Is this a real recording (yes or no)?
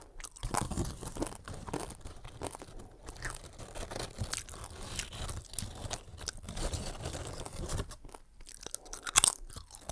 yes